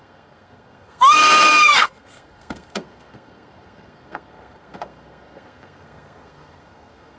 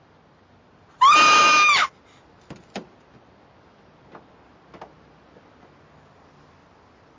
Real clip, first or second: second